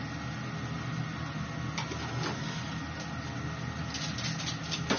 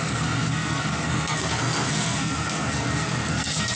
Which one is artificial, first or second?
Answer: second